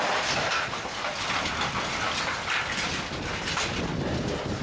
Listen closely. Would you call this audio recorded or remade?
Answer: recorded